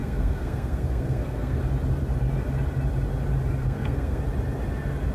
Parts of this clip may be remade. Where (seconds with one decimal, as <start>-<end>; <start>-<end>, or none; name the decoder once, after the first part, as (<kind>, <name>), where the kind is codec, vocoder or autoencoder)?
0.0-1.6 (codec, SNAC); 3.6-4.2